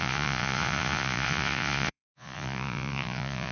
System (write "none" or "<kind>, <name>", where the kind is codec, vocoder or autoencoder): vocoder, Vocos